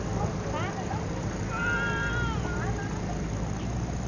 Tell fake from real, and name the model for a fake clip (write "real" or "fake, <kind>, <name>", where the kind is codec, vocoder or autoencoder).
real